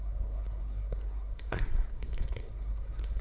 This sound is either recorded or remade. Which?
remade